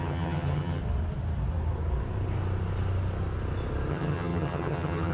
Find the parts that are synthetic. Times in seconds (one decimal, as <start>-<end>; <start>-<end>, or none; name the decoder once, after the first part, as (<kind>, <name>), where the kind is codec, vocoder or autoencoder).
0.0-0.8 (vocoder, HiFi-GAN); 3.9-5.1